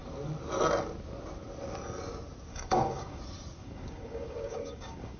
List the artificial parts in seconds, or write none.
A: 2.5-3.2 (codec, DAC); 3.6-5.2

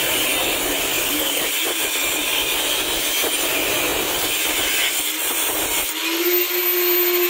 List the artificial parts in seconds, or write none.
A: 0.9-1.4 (codec, DAC)

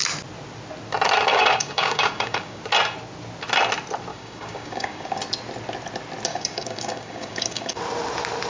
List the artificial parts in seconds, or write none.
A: 1.3-2.6 (codec, DAC); 4.1-5.2; 6.3-7.8

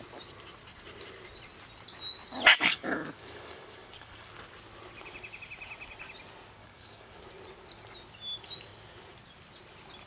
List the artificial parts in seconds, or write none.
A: 2.5-4.3 (codec, DAC); 6.6-7.2